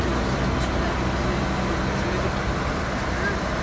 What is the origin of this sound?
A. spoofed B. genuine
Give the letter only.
B